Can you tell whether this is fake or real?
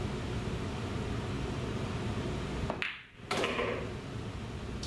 real